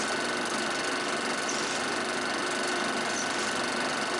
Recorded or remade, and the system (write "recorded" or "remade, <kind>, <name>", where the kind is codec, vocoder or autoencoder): recorded